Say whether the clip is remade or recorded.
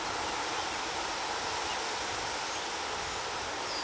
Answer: recorded